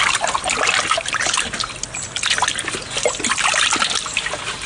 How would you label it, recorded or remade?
recorded